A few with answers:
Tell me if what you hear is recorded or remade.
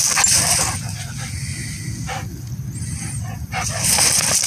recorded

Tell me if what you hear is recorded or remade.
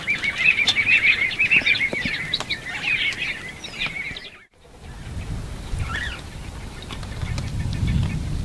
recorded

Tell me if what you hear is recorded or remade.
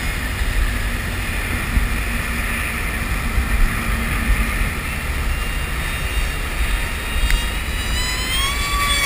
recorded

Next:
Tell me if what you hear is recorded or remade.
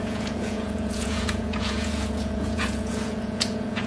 remade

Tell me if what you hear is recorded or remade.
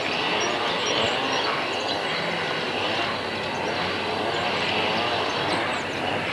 recorded